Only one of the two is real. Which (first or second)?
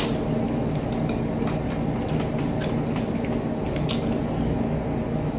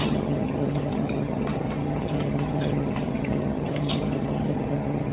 first